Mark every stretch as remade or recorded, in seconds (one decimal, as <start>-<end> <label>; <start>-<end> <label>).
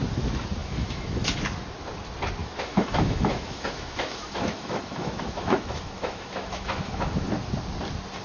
0.0-0.6 recorded; 0.6-1.4 remade; 1.4-2.4 recorded; 2.4-7.3 remade; 7.3-8.2 recorded